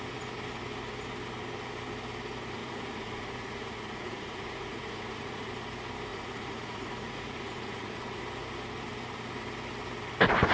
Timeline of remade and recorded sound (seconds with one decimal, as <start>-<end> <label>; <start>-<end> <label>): 0.0-2.6 recorded; 2.6-5.5 remade; 5.5-6.1 recorded; 6.1-8.2 remade; 8.2-10.5 recorded

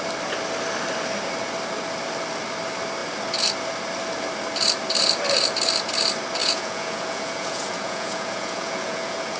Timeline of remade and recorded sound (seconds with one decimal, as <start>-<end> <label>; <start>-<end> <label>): 0.0-6.4 recorded; 6.4-9.4 remade

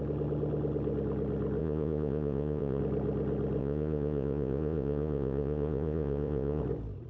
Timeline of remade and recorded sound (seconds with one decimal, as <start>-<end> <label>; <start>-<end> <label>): 0.0-1.6 recorded; 1.6-2.8 remade; 2.8-3.6 recorded; 3.6-6.6 remade; 6.6-7.1 recorded

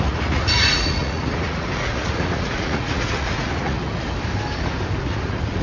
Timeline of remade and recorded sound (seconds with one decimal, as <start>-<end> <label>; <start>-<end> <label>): 0.0-3.9 remade; 3.9-5.0 recorded; 5.0-5.6 remade